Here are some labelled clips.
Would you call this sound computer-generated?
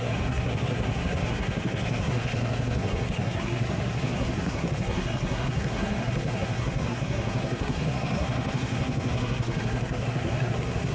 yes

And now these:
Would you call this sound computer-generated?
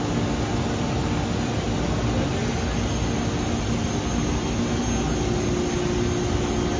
no